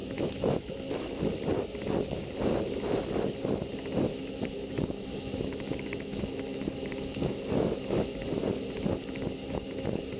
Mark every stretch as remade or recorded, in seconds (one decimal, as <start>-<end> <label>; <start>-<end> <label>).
0.0-1.2 remade; 1.2-4.1 recorded; 4.1-7.8 remade; 7.8-10.2 recorded